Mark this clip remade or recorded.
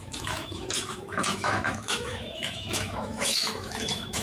remade